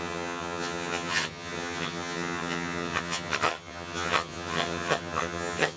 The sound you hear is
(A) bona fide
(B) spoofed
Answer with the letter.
B